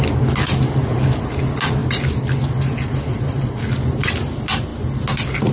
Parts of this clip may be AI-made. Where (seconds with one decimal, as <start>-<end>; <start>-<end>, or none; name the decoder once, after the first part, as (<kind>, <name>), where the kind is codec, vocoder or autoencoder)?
none